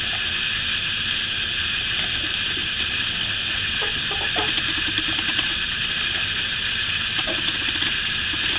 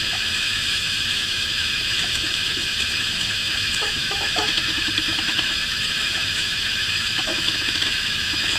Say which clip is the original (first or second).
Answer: first